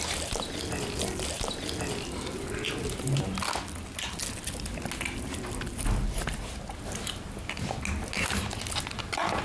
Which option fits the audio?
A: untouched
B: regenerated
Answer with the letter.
A